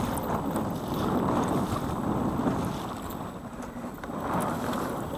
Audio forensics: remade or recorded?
recorded